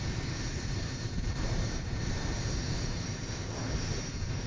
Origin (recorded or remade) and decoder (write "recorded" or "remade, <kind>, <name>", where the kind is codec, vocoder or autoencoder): remade, vocoder, BigVGAN v2